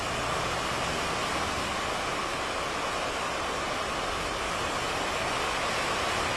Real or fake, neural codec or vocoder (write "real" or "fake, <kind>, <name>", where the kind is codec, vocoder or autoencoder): real